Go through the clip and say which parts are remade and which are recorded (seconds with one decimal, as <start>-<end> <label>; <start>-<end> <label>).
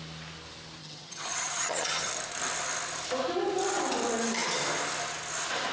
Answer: 0.0-0.8 recorded; 0.8-2.1 remade; 2.1-5.7 recorded